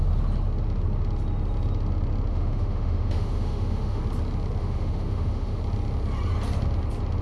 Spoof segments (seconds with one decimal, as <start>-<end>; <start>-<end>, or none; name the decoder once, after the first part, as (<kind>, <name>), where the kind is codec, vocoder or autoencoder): 2.3-4.0 (autoencoder, DAC-VAE); 4.6-5.6